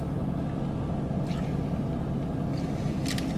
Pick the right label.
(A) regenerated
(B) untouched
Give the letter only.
B